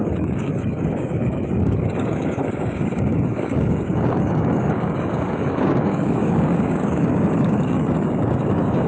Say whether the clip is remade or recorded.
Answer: remade